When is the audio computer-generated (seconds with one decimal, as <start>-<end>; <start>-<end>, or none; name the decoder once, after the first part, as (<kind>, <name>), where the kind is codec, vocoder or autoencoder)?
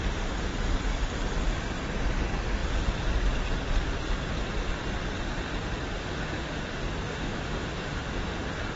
6.0-6.6 (autoencoder, DAC-VAE); 7.1-8.0